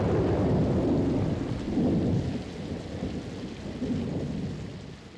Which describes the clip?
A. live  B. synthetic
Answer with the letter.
A